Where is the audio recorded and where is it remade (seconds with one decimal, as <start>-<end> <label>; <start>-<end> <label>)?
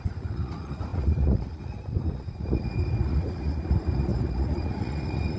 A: 0.0-5.4 remade